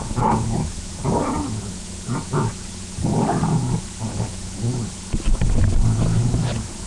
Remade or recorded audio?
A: recorded